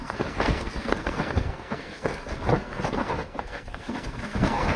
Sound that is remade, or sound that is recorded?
remade